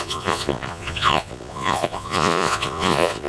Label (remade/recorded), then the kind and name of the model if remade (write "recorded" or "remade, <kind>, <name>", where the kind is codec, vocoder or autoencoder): remade, vocoder, Vocos